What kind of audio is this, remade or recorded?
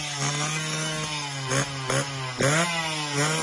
recorded